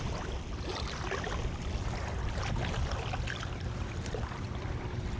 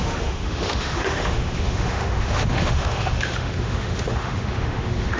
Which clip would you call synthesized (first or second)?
second